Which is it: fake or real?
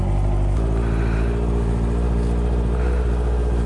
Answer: real